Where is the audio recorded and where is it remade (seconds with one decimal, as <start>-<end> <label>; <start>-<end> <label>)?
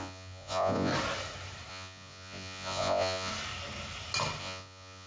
0.0-0.9 remade; 0.9-1.7 recorded; 1.7-3.3 remade; 3.3-4.4 recorded; 4.4-5.1 remade